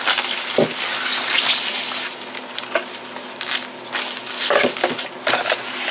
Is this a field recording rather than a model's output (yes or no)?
yes